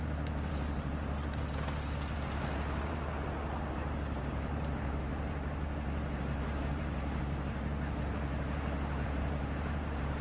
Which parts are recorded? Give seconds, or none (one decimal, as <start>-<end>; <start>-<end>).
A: 3.1-3.7